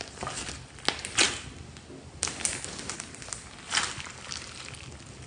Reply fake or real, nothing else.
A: real